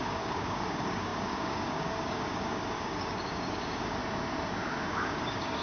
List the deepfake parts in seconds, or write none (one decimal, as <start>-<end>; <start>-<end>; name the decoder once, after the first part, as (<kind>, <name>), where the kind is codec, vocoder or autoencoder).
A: 0.0-4.0 (codec, DAC); 4.9-5.6